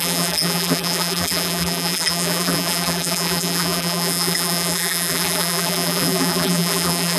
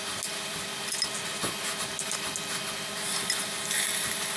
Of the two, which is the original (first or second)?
second